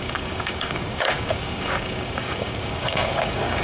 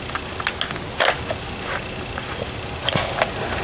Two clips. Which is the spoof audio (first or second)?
first